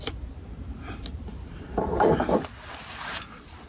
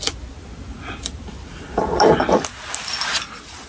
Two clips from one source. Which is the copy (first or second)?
first